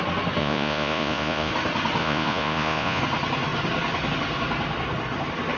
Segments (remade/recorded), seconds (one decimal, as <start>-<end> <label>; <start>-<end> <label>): 0.0-0.4 recorded; 0.4-1.5 remade; 1.5-2.0 recorded; 2.0-3.0 remade; 3.0-5.6 recorded